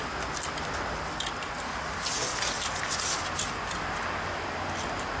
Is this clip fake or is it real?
real